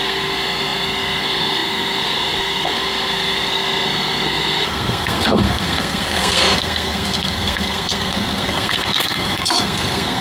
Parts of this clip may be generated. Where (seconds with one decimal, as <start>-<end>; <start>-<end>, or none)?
0.0-10.2